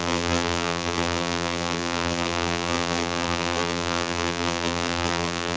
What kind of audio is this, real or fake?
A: fake